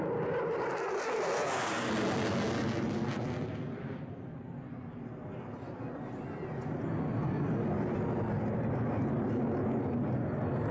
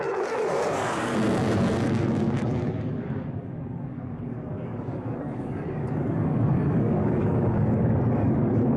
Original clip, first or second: first